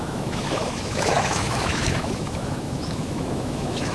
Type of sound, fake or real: fake